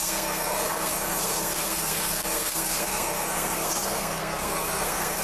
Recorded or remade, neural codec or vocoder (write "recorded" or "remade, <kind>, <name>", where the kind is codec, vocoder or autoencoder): remade, codec, SNAC